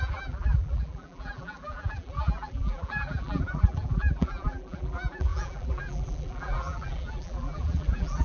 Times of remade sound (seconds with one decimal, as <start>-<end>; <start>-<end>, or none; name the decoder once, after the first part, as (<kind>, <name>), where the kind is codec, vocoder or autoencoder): 0.0-8.2 (vocoder, BigVGAN v2)